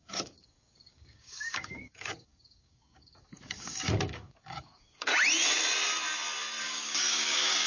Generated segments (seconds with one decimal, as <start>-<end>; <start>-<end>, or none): 0.0-5.1; 6.6-7.7